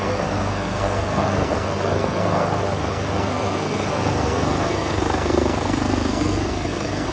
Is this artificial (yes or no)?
yes